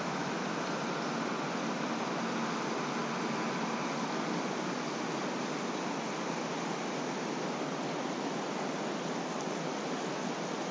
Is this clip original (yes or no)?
yes